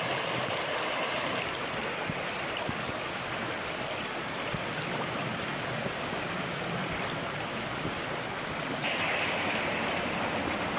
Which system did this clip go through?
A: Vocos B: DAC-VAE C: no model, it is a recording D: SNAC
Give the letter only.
C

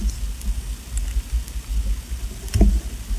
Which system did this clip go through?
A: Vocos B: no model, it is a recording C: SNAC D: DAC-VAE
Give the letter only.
B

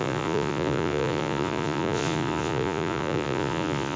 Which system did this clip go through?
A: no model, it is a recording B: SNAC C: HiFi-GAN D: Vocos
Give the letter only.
D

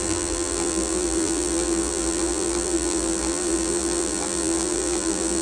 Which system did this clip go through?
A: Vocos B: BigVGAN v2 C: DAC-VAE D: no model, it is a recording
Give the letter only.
B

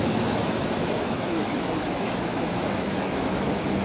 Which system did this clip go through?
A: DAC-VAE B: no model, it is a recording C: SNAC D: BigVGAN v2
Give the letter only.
A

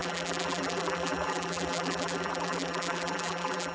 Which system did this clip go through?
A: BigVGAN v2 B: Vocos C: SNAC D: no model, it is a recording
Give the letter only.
A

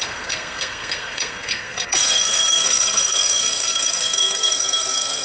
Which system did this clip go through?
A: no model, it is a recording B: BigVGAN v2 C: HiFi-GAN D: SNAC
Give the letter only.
D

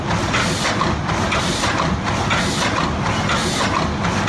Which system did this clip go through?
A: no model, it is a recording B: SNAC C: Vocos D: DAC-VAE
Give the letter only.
A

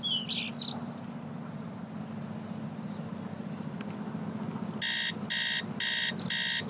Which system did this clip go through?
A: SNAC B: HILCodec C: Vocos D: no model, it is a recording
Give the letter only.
D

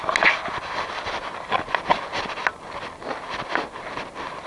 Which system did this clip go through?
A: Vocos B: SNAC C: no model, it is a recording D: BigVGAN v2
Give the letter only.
C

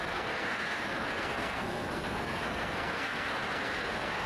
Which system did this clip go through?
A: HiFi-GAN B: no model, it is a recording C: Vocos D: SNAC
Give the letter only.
D